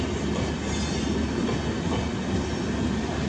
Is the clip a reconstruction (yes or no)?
no